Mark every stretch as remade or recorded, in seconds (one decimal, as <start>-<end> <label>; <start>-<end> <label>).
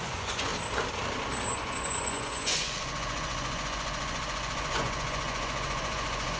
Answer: 0.0-0.5 remade; 0.5-1.5 recorded; 1.5-6.4 remade